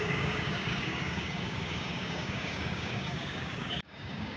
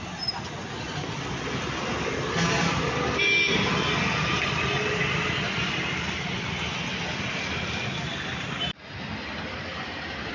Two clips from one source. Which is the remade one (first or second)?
first